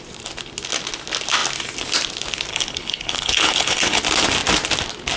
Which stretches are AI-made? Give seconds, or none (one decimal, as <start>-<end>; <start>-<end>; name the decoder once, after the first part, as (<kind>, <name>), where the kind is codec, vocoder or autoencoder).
2.5-4.0 (codec, HILCodec)